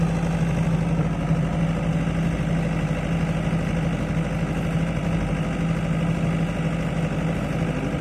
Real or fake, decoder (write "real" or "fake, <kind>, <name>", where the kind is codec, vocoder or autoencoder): real